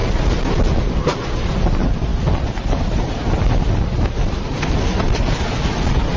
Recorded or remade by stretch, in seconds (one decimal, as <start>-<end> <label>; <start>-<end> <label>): 0.0-2.1 recorded; 2.1-3.0 remade; 3.0-4.9 recorded; 4.9-6.2 remade